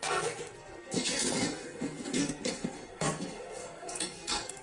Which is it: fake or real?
fake